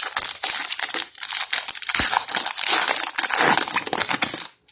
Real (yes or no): yes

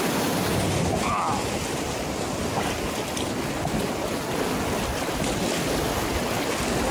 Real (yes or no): yes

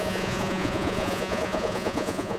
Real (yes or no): no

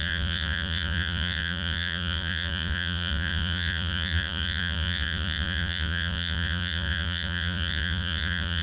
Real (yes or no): no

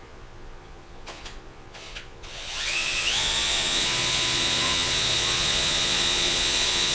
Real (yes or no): no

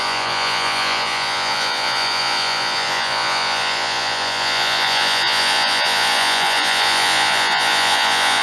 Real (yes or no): no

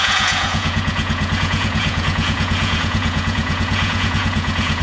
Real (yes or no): no